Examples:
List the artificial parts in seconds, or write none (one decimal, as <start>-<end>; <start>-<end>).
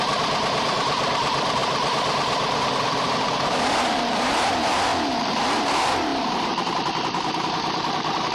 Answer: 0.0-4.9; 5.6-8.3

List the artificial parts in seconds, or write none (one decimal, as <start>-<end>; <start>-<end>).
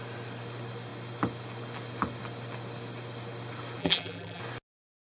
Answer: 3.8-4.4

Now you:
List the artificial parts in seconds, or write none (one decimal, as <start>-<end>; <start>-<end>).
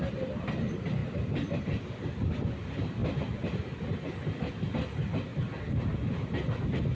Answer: 1.0-1.6; 3.0-4.5; 5.3-5.9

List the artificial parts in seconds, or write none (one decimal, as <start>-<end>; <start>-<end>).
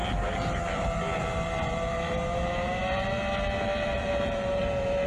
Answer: 0.0-5.1